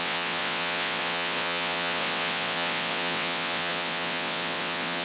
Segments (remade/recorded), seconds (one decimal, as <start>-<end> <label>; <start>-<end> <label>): 0.0-5.0 remade